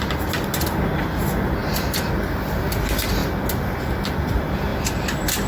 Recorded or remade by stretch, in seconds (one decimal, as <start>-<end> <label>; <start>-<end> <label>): 0.0-5.5 recorded